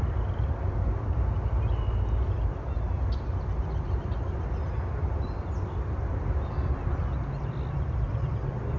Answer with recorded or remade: recorded